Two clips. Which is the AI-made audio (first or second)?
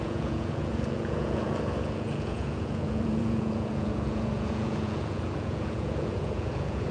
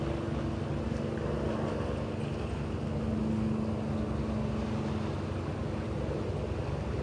first